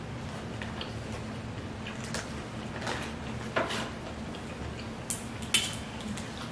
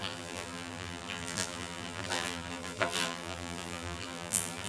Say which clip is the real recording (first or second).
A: first